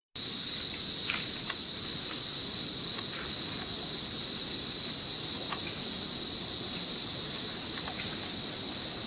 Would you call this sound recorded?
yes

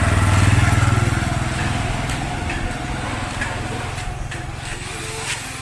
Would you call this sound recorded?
yes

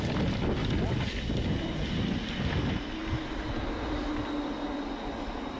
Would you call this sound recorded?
yes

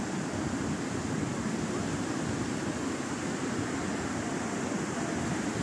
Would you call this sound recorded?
yes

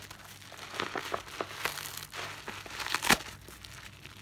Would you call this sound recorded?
yes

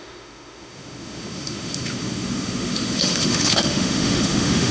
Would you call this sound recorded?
no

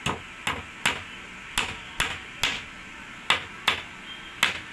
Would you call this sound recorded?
yes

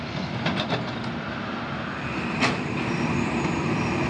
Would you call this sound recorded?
yes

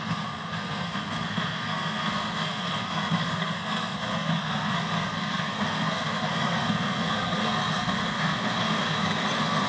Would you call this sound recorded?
no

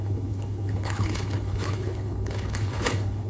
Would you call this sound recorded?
no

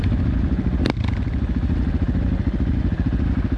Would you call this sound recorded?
yes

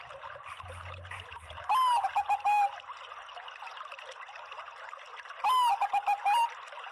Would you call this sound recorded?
yes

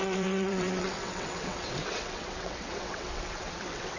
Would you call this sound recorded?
no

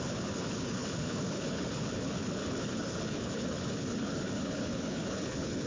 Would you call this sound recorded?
no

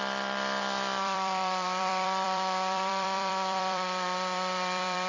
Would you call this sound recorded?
no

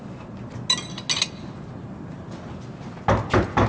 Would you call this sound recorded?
yes